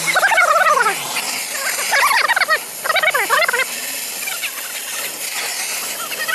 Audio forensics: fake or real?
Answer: real